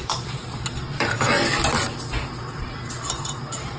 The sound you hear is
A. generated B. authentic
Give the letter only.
B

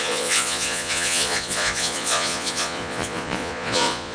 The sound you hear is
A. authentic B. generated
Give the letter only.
B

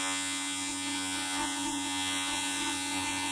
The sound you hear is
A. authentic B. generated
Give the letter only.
B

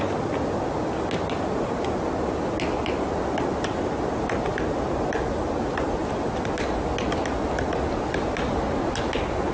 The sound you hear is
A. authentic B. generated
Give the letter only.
A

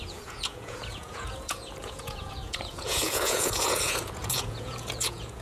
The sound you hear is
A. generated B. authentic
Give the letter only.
A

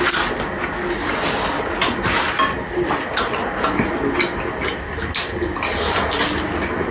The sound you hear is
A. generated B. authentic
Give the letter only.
B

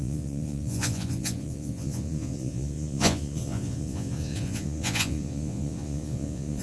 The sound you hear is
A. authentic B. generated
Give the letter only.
B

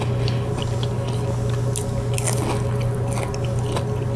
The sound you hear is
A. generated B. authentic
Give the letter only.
B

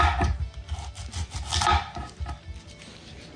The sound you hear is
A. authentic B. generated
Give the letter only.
A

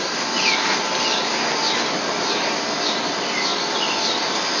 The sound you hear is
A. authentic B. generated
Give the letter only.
A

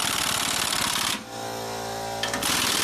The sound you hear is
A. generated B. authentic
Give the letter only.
B